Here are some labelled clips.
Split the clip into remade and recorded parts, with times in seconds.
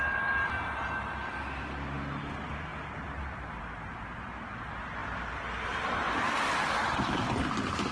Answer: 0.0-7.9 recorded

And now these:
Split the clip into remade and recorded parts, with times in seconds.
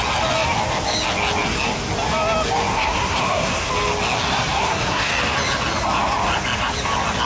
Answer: 0.0-2.7 recorded; 2.7-3.7 remade; 3.7-4.5 recorded; 4.5-5.1 remade; 5.1-7.3 recorded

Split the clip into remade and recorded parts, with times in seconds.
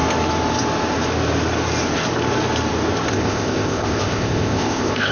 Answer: 0.0-3.1 recorded; 3.1-5.1 remade